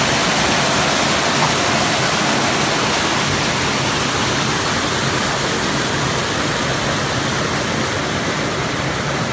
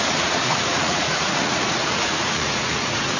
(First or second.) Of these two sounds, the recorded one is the first